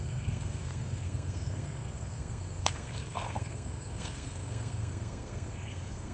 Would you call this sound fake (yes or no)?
yes